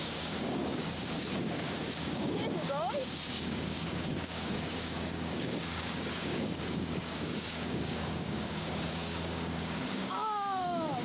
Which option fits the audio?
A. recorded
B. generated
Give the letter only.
B